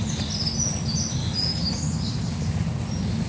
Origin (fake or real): real